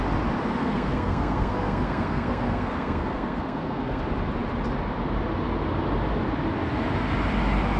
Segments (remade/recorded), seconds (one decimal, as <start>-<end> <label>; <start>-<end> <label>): 0.0-0.6 recorded; 0.6-4.0 remade; 4.0-7.8 recorded